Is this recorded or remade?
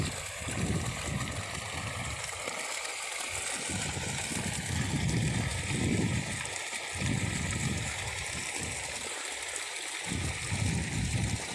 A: recorded